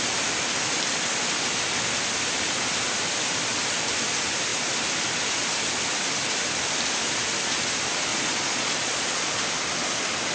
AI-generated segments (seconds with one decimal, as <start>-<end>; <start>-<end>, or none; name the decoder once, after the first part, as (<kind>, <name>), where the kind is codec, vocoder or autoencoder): 8.1-9.4 (vocoder, Vocos)